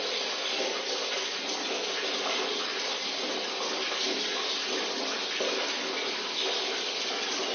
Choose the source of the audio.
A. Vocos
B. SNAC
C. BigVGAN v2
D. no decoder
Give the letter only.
D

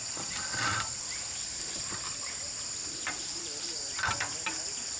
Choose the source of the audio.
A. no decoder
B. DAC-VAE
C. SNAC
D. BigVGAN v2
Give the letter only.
D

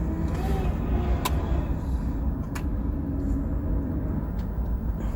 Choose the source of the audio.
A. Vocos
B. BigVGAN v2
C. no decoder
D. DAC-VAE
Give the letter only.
C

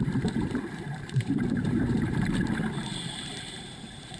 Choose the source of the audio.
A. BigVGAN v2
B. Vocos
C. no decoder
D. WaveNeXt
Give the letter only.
A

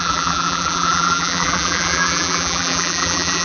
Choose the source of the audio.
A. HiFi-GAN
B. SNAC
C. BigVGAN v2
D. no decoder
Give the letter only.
C